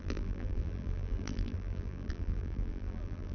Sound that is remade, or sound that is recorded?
remade